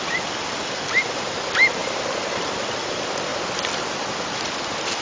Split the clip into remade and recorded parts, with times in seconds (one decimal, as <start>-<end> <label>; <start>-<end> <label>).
0.0-1.8 recorded; 1.8-2.4 remade; 2.4-5.0 recorded